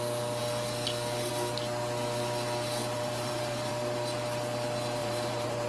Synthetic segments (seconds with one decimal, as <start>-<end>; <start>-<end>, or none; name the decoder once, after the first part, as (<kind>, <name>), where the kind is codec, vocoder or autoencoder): 2.8-3.7 (vocoder, BigVGAN v2); 5.0-5.7